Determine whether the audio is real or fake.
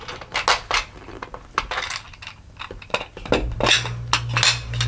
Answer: real